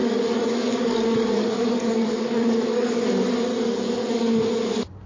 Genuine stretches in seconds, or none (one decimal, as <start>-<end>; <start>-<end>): 3.0-3.5; 4.4-5.1